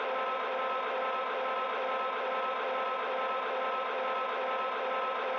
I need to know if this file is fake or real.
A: real